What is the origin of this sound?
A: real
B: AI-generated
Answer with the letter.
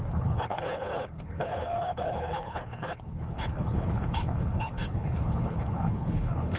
B